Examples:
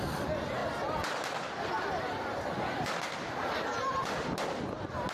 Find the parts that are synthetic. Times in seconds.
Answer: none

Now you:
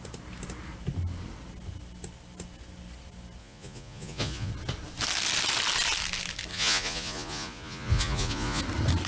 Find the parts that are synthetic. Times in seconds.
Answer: 3.4-4.5 (vocoder, Vocos); 6.5-8.6

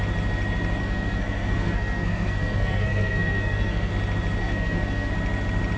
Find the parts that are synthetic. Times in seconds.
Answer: 0.8-3.9 (codec, SNAC); 4.4-5.1

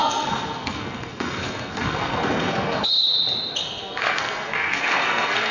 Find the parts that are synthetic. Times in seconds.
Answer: 0.0-2.9 (codec, SNAC); 3.6-5.5

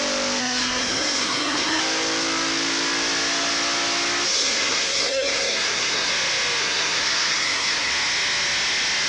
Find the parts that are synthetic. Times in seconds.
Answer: 0.4-1.8 (codec, SNAC); 4.3-6.1; 6.6-7.9